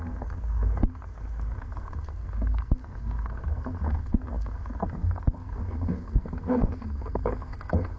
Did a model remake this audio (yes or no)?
yes